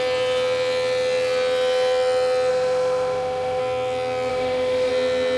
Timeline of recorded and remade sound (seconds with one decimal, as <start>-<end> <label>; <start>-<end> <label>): 0.0-2.5 recorded; 2.5-3.6 remade; 3.6-4.3 recorded; 4.3-4.9 remade; 4.9-5.4 recorded